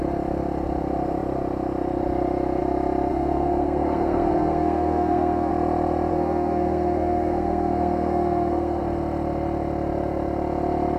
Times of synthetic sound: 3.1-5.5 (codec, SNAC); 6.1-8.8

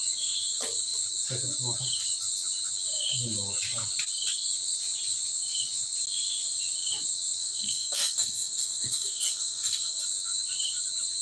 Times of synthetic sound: 7.4-10.0 (codec, SNAC)

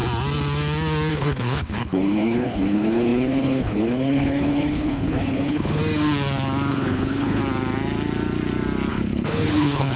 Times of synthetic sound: 1.1-5.8 (codec, HILCodec); 6.7-7.4; 8.9-10.0

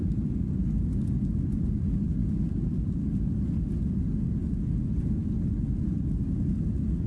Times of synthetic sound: none

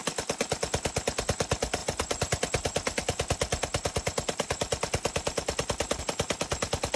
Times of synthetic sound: none

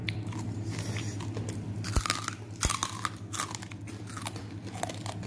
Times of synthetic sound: none